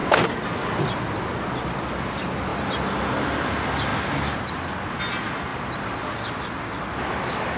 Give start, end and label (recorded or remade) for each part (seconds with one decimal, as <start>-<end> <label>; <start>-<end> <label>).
0.0-7.6 recorded